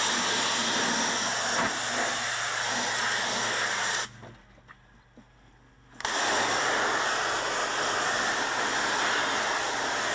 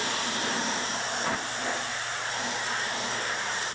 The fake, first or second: second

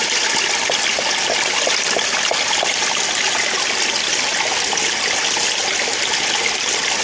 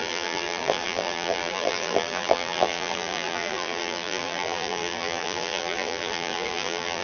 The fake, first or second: second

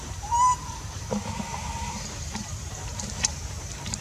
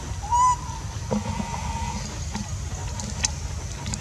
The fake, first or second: first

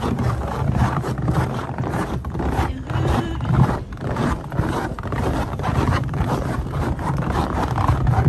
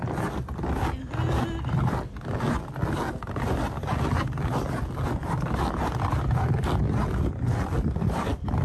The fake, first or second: first